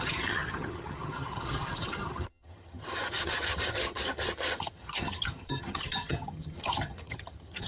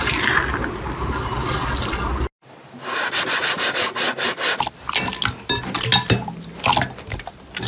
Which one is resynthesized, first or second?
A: first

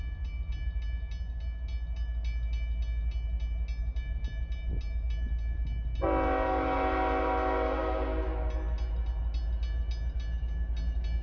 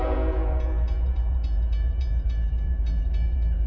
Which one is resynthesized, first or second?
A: second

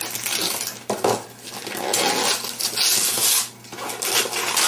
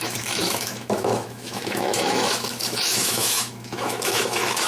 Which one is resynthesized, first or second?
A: second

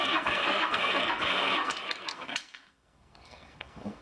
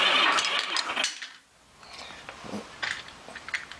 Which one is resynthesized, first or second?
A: first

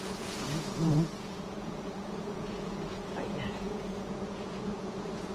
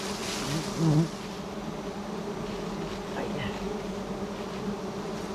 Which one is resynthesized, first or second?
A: first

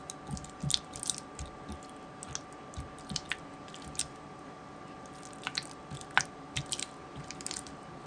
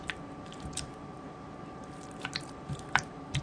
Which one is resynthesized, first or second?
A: second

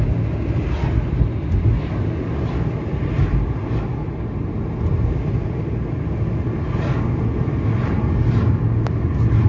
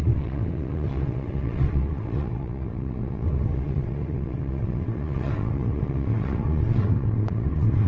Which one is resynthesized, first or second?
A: second